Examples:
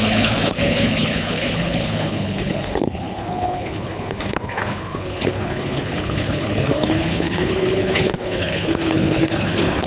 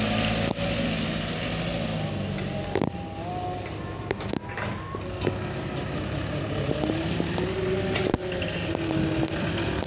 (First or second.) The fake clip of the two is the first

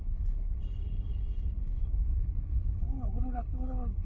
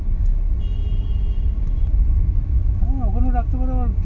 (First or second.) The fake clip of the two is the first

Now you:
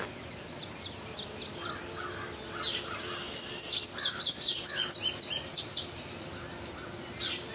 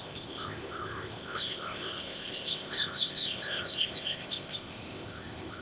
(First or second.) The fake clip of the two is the second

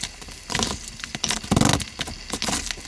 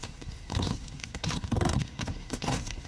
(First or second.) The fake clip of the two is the second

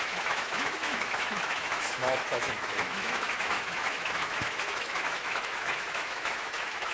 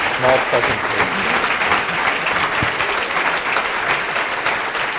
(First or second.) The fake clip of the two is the first